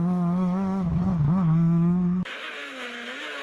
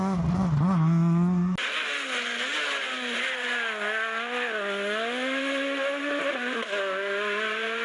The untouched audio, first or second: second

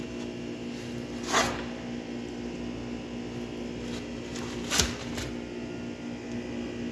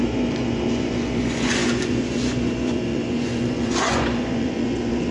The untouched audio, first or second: first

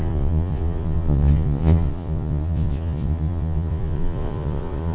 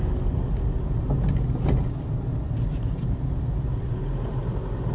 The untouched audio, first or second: second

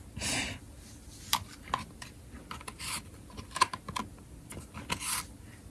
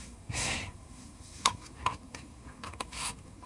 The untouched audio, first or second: first